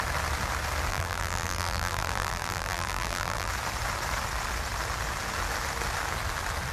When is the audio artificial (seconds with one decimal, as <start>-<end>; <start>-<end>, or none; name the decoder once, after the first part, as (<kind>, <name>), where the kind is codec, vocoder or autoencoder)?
0.9-3.5 (vocoder, BigVGAN v2)